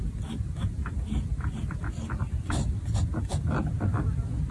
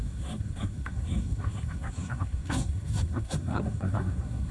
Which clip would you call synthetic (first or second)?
second